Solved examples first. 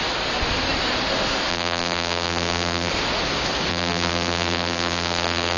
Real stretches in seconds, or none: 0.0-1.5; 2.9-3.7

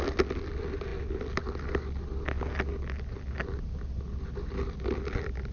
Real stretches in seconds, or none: 0.0-5.5

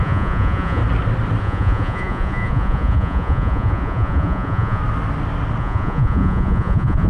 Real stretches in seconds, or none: 0.8-1.4; 4.8-5.6